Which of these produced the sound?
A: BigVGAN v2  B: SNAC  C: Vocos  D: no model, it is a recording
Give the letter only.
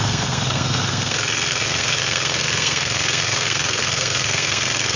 B